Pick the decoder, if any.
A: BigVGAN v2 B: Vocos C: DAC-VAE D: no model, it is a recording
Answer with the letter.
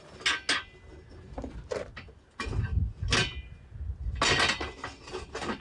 D